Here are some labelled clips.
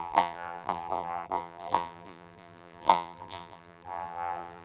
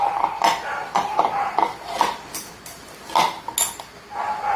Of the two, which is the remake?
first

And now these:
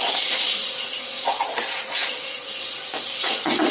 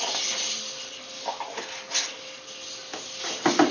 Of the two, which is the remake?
first